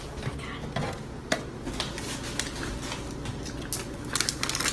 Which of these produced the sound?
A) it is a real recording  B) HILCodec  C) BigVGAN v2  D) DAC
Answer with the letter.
A